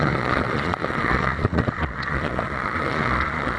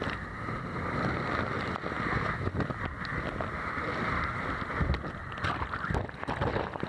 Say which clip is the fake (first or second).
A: first